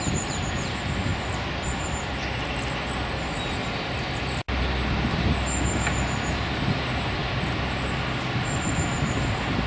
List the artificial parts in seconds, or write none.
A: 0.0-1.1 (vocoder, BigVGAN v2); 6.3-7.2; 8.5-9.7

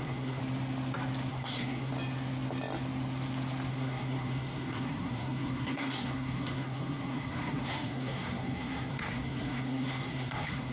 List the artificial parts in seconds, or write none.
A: 0.0-0.4 (codec, SNAC); 1.3-1.9; 3.7-10.7

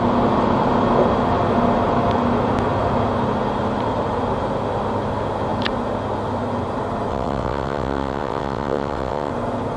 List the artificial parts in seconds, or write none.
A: 7.1-9.3 (vocoder, WaveNeXt)